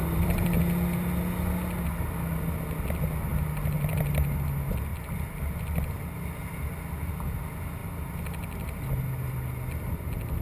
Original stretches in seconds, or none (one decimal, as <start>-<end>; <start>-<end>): 0.6-3.3; 4.0-4.9; 5.4-10.4